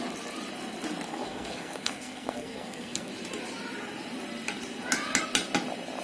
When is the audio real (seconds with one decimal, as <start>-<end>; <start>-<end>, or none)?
0.0-1.1; 3.1-6.0